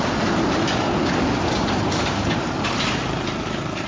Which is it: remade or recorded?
remade